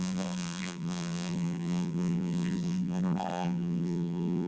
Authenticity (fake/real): fake